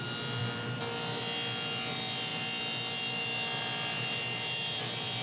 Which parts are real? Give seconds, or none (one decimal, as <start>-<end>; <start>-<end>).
0.0-5.2